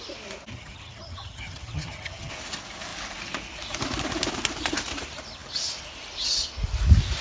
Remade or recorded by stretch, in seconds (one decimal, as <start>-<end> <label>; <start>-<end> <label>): 0.0-0.5 recorded; 0.5-2.3 remade; 2.3-7.2 recorded